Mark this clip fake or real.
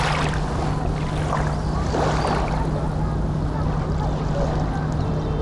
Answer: real